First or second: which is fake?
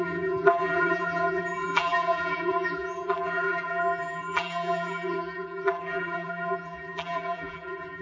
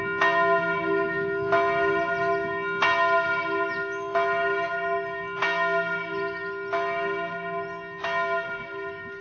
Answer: first